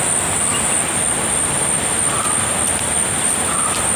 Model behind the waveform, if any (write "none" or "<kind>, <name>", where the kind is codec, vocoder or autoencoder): none